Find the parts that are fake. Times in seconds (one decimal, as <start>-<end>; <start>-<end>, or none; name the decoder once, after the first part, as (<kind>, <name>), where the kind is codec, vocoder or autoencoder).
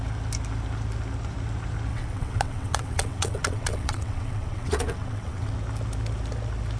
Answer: 1.9-5.5 (vocoder, WaveNeXt)